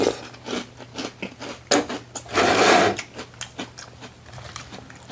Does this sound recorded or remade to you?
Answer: recorded